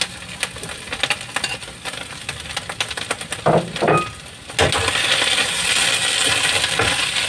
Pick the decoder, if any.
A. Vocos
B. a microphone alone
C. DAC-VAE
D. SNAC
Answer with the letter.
B